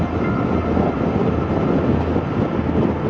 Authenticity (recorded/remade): recorded